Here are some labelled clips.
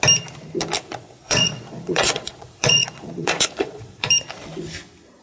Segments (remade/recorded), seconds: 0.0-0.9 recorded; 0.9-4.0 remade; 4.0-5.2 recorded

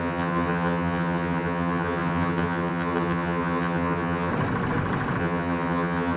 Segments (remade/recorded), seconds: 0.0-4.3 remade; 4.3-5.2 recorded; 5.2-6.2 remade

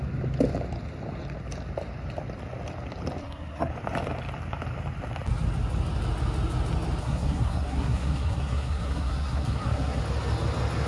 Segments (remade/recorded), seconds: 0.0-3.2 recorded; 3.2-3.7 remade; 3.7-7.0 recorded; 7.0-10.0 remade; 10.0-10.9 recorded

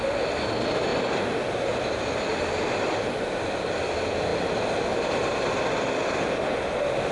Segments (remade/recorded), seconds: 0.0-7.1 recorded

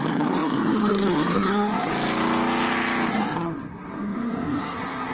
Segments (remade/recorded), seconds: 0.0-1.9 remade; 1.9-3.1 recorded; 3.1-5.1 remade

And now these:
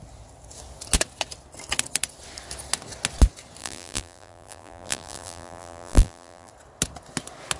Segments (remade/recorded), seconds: 0.0-3.6 recorded; 3.6-6.5 remade; 6.5-7.6 recorded

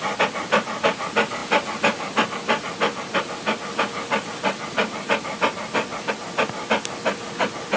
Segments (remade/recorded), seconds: 0.0-7.8 recorded